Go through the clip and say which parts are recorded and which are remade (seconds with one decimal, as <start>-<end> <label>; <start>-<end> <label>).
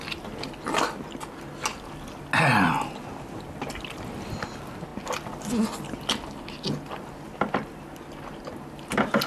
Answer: 0.0-9.3 recorded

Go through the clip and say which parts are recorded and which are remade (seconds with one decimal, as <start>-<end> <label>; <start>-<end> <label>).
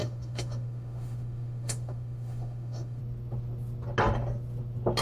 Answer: 0.0-3.0 remade; 3.0-5.0 recorded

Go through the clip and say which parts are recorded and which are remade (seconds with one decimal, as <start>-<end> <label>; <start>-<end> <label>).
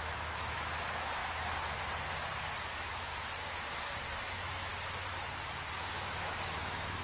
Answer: 0.0-1.2 remade; 1.2-2.7 recorded; 2.7-3.1 remade; 3.1-4.2 recorded; 4.2-4.7 remade; 4.7-5.8 recorded; 5.8-7.0 remade